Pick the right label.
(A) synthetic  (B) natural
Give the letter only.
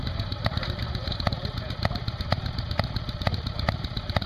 A